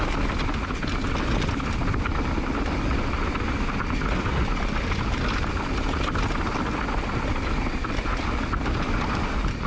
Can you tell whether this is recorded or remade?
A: recorded